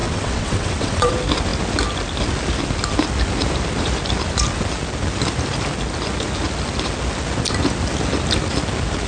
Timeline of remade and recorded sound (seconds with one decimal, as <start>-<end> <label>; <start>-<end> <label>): 0.0-1.1 remade; 1.1-9.1 recorded